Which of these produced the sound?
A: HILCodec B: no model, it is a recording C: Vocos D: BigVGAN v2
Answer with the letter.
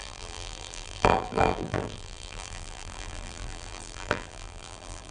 D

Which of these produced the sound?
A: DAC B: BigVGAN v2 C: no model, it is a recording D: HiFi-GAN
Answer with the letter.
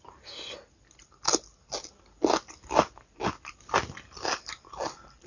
C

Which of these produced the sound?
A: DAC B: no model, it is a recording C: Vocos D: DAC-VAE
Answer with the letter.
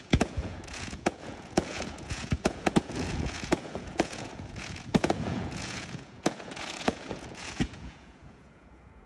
C